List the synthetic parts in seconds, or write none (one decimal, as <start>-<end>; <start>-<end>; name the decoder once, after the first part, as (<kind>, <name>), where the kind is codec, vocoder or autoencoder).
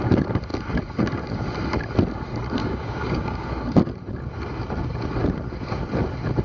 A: 2.6-3.5 (codec, DAC)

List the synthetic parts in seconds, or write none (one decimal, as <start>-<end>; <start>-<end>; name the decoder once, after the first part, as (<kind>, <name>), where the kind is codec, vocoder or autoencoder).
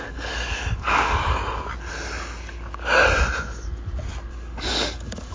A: 0.0-1.4 (codec, DAC); 4.3-5.3